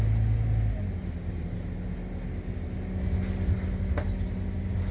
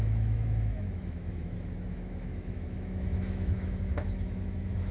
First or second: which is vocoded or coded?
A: second